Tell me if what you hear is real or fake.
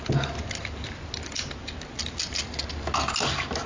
real